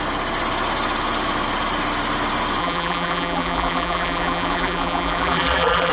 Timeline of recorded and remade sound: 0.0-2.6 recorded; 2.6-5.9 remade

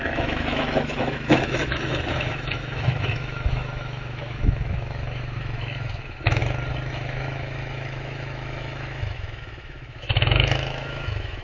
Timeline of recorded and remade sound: 0.0-6.4 remade; 6.4-6.9 recorded; 6.9-11.4 remade